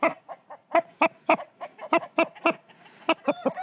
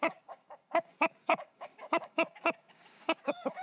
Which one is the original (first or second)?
first